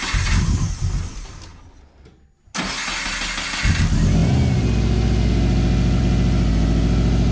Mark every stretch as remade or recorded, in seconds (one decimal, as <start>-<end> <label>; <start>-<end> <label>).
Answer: 0.0-7.3 recorded